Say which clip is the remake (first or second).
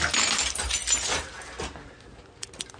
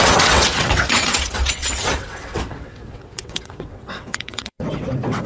second